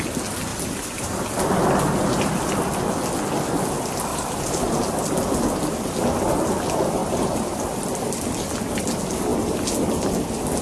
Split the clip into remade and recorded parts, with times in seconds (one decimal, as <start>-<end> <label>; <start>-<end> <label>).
0.0-0.5 recorded; 0.5-2.5 remade; 2.5-4.1 recorded; 4.1-4.9 remade; 4.9-7.0 recorded; 7.0-7.8 remade; 7.8-10.6 recorded